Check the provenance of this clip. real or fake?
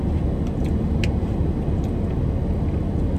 real